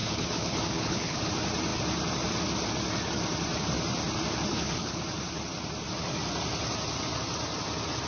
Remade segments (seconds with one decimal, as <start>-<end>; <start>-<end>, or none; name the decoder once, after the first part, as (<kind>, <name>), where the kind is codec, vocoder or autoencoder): 0.0-1.2 (codec, HILCodec); 4.5-5.0